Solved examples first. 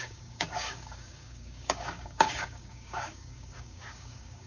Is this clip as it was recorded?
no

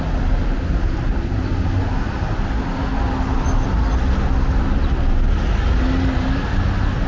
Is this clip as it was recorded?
yes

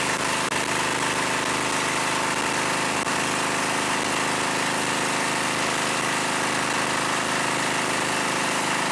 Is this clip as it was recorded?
yes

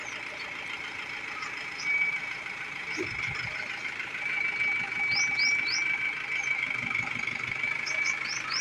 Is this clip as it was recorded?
no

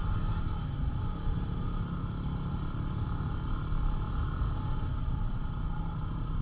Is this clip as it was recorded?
yes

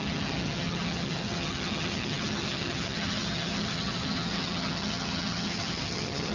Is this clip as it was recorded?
no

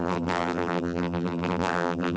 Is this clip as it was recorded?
no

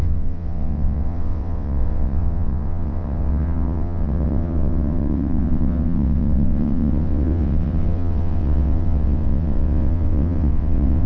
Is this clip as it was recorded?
no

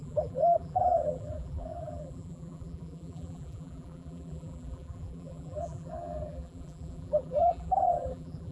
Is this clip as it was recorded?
no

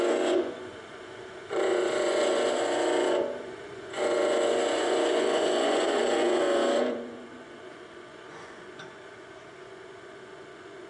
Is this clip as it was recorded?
no